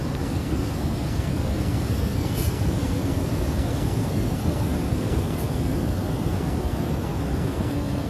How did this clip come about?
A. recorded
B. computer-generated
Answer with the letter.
B